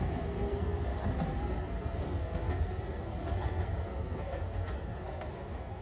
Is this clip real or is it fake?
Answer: fake